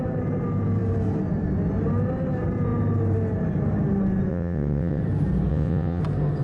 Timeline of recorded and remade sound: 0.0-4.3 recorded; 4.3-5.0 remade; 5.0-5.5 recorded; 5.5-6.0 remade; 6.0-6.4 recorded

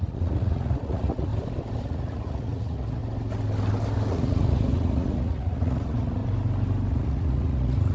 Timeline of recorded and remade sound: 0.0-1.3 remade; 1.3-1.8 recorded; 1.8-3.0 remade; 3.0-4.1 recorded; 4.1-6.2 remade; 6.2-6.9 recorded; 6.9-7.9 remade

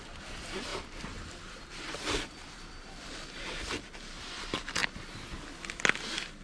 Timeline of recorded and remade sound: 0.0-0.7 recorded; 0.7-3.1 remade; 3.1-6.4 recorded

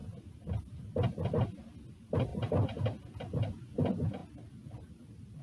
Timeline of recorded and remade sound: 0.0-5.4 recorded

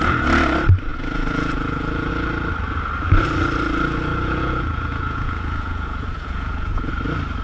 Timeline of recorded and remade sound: 0.0-0.9 recorded; 0.9-2.1 remade; 2.1-4.1 recorded; 4.1-6.9 remade; 6.9-7.4 recorded

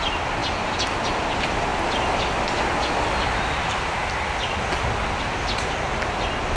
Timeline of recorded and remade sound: 0.0-6.6 recorded